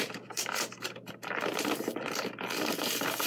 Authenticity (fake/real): real